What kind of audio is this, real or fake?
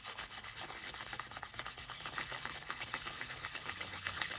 fake